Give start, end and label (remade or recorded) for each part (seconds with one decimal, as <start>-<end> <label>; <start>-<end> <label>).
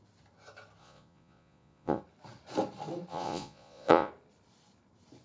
0.0-0.8 recorded; 0.8-2.0 remade; 2.0-3.1 recorded; 3.1-4.1 remade; 4.1-5.2 recorded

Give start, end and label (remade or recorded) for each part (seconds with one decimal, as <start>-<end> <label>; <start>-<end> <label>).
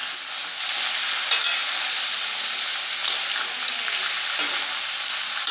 0.0-5.5 recorded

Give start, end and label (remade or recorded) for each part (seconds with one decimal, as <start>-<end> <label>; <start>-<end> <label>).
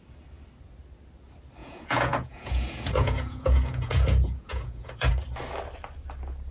0.0-1.6 recorded; 1.6-5.1 remade; 5.1-6.5 recorded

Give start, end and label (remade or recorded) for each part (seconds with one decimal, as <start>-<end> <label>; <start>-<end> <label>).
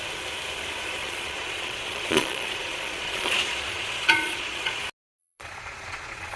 0.0-1.0 recorded; 1.0-4.8 remade; 4.8-5.2 recorded; 5.2-6.4 remade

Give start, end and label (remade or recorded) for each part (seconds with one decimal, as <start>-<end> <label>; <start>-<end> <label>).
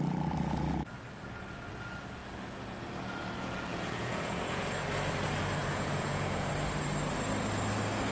0.0-3.7 recorded; 3.7-4.6 remade; 4.6-5.6 recorded; 5.6-6.5 remade; 6.5-8.1 recorded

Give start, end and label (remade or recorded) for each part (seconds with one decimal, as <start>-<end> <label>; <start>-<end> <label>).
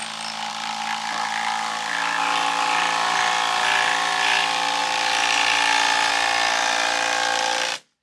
0.0-8.0 recorded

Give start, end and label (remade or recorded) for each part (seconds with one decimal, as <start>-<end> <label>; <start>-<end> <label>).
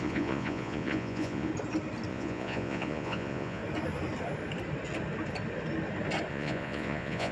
0.0-1.5 remade; 1.5-2.1 recorded; 2.1-3.6 remade; 3.6-6.3 recorded; 6.3-7.3 remade